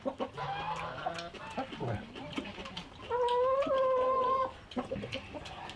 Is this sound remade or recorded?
recorded